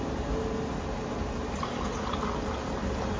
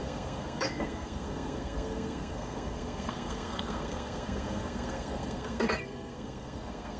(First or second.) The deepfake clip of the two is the second